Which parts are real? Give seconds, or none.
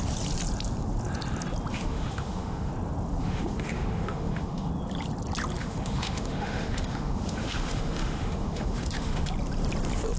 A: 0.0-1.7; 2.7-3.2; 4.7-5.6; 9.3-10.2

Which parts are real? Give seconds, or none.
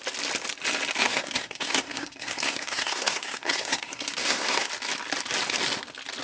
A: 0.0-1.0; 4.7-6.2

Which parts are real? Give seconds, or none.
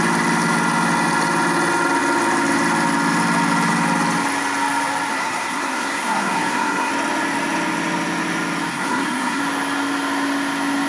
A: 0.0-5.1; 6.9-8.7; 9.4-10.9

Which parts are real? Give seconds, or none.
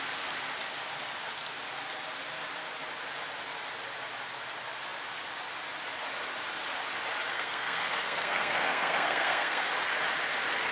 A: 0.0-7.3; 9.6-10.7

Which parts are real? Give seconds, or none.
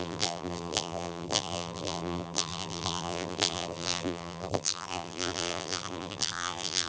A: none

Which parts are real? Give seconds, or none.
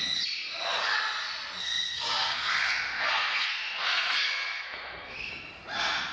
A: 0.0-1.6; 5.3-6.1